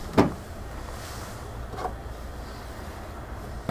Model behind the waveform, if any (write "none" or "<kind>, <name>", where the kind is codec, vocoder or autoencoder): none